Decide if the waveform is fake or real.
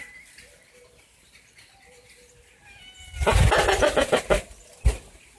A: real